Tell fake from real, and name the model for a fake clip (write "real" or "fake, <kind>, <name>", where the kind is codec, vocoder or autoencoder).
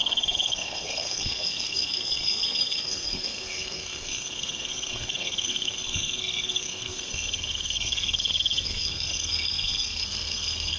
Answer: fake, codec, SNAC